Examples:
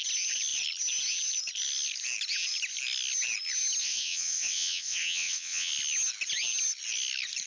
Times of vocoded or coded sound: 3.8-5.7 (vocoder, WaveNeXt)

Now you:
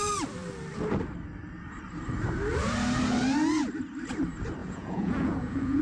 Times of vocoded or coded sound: 4.6-5.8 (vocoder, Vocos)

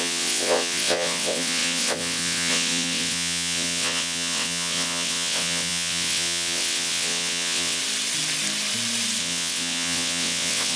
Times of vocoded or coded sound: 0.0-7.8 (vocoder, WaveNeXt); 9.2-10.8

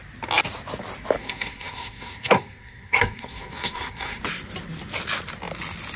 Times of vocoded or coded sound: 1.2-4.2 (codec, SNAC)

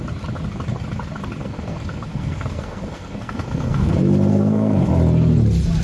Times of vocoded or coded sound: 1.4-3.9 (codec, SNAC); 4.3-4.9

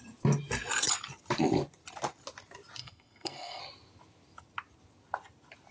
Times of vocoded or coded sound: 2.8-3.6 (codec, SNAC)

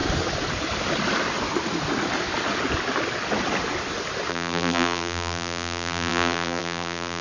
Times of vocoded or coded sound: 4.3-7.2 (vocoder, BigVGAN v2)

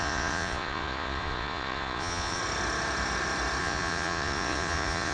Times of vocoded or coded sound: 0.0-2.4 (vocoder, Vocos); 3.6-5.1